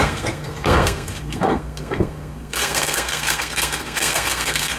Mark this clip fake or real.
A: fake